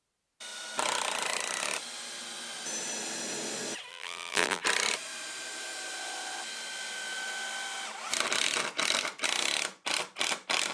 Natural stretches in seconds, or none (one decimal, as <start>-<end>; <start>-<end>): 0.0-3.9; 4.6-10.7